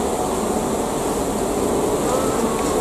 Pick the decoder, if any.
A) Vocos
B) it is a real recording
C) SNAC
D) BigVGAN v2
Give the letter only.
B